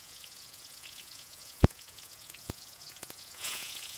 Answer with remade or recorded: remade